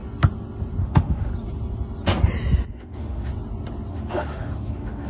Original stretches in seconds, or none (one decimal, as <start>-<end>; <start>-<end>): 0.0-0.8; 1.3-2.7; 3.3-3.9